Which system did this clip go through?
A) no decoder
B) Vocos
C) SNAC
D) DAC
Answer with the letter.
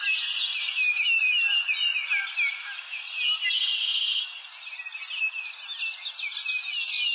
A